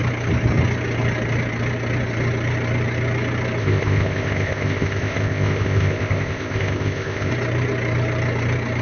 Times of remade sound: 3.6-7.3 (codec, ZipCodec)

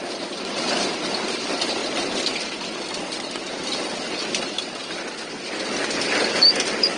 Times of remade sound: 0.0-1.8 (vocoder, BigVGAN v2); 6.0-7.0

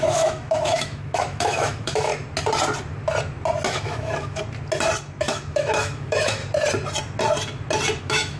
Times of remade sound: 0.0-2.1 (autoencoder, DAC-VAE); 3.7-4.4; 5.2-6.4; 8.0-8.4

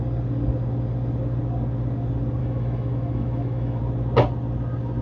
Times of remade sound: 2.4-3.8 (autoencoder, DAC-VAE)